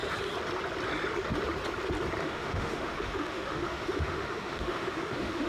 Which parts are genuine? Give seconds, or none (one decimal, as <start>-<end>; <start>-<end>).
0.0-2.2